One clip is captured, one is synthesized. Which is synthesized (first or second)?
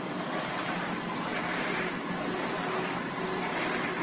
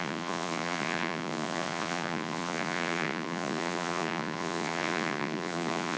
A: second